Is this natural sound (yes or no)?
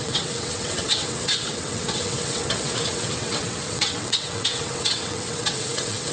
no